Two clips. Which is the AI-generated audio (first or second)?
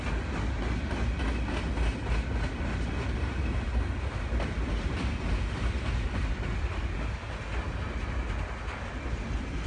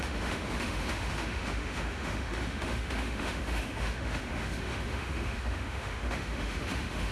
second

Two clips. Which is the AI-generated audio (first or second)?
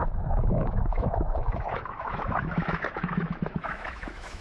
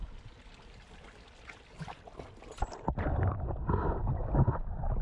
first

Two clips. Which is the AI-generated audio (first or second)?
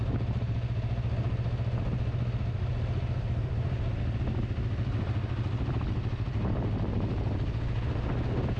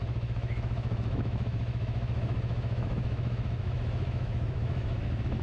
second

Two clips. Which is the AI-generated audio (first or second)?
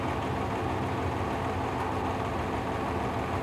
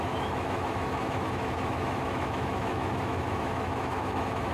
second